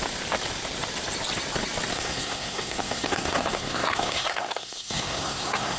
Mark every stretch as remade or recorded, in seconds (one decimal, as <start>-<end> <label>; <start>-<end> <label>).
0.0-1.9 recorded; 1.9-5.8 remade